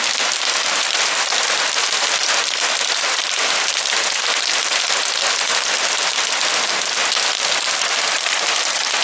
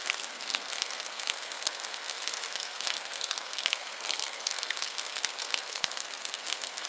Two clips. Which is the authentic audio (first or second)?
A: first